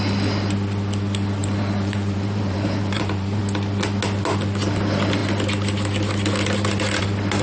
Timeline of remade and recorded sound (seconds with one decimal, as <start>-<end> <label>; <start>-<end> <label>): 0.0-1.4 recorded; 1.4-3.4 remade; 3.4-7.4 recorded